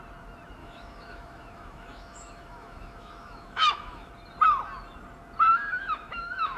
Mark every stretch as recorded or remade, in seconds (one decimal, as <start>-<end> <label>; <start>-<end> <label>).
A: 0.0-0.6 recorded; 0.6-4.1 remade; 4.1-5.5 recorded; 5.5-6.6 remade